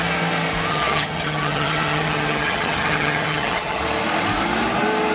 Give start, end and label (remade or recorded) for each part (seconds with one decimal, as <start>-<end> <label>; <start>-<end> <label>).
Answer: 0.0-0.7 recorded; 0.7-3.8 remade; 3.8-5.1 recorded